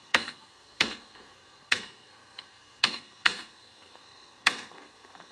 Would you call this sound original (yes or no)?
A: no